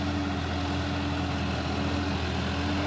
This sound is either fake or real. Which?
real